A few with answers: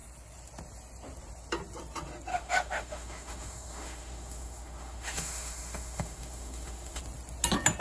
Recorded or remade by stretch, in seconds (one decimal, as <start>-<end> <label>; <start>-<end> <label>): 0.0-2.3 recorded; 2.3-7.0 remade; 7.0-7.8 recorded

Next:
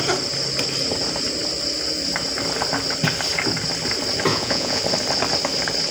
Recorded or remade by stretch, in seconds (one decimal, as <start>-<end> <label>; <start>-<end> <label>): 0.0-4.3 recorded; 4.3-4.8 remade; 4.8-5.9 recorded

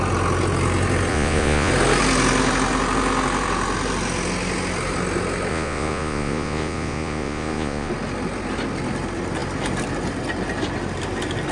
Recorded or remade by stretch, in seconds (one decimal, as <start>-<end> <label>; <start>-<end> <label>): 0.0-1.1 recorded; 1.1-1.7 remade; 1.7-5.5 recorded; 5.5-7.9 remade; 7.9-11.5 recorded

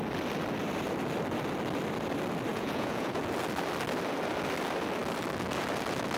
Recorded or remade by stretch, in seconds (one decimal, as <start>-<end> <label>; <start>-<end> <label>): 0.0-2.5 recorded; 2.5-3.2 remade; 3.2-6.2 recorded

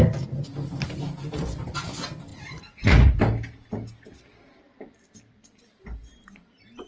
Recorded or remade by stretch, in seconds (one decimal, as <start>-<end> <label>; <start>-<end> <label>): 0.0-2.3 recorded; 2.3-3.2 remade; 3.2-6.9 recorded